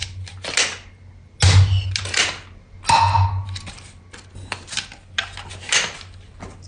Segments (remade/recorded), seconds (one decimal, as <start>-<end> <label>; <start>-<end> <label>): 0.0-6.7 recorded